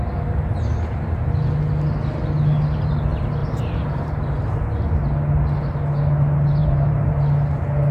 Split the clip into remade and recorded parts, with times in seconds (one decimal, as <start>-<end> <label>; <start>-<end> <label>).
0.0-3.4 recorded; 3.4-4.1 remade; 4.1-6.6 recorded; 6.6-7.1 remade; 7.1-7.9 recorded